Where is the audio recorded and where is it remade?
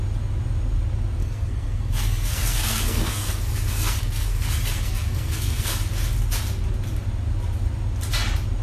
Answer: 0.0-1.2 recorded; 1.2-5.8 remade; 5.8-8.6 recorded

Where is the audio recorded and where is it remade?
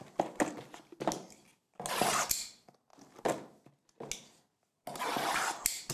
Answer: 0.0-5.9 recorded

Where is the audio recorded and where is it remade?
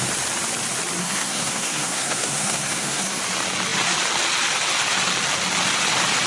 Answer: 0.0-1.0 recorded; 1.0-3.2 remade; 3.2-6.3 recorded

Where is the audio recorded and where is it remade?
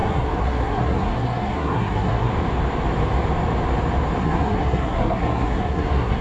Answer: 0.0-2.3 remade; 2.3-4.2 recorded; 4.2-6.2 remade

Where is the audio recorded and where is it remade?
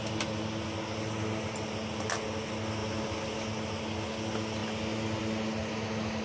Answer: 0.0-6.2 recorded